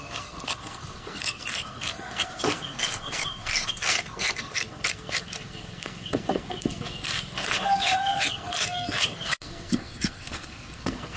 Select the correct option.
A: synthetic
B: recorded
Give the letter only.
A